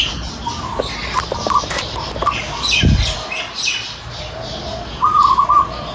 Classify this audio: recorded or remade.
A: recorded